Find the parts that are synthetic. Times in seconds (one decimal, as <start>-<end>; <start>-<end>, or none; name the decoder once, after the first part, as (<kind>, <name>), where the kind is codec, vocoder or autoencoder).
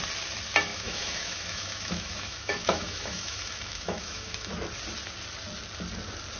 0.7-4.5 (autoencoder, DAC-VAE)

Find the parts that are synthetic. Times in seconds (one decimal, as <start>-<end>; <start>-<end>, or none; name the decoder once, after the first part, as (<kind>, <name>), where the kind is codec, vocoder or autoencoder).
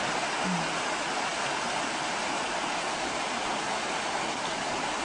none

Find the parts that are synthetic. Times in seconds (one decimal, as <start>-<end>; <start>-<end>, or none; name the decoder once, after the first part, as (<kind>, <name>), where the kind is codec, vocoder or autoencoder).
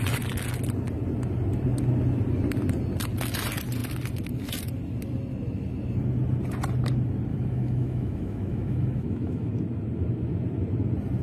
7.3-9.5 (autoencoder, DAC-VAE)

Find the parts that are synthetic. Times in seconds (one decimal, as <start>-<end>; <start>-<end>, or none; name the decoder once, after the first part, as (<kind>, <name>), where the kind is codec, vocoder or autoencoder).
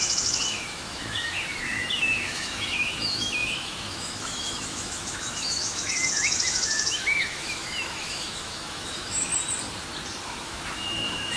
0.0-9.3 (autoencoder, DAC-VAE); 10.2-11.4